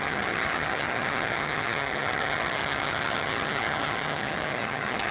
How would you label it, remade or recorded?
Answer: remade